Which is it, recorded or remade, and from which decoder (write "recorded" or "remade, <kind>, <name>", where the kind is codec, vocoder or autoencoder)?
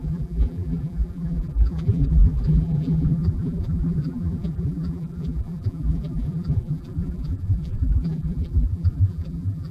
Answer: remade, vocoder, BigVGAN v2